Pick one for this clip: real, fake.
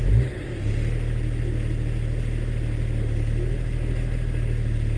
real